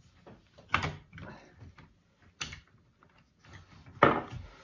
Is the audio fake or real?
real